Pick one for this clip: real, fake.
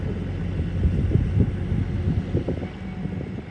real